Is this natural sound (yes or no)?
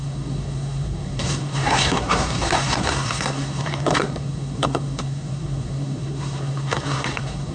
no